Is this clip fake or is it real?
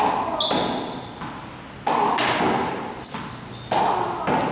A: real